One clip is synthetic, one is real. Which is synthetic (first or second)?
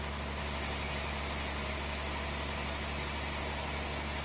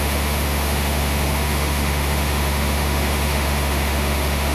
second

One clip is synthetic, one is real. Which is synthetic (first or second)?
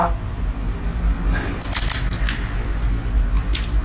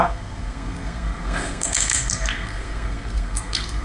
second